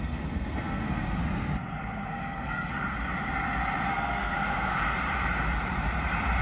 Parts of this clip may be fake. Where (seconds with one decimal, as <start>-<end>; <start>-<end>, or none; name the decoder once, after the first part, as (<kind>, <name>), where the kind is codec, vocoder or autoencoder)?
0.0-1.2 (codec, SNAC); 1.8-2.7; 3.9-4.7